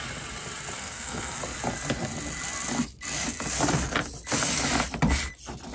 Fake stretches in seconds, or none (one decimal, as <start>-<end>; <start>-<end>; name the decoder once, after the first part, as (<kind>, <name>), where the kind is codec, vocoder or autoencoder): 0.8-1.4 (codec, SNAC)

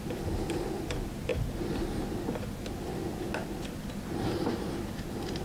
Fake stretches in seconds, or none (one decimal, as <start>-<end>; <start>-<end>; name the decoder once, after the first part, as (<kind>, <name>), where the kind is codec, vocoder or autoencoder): none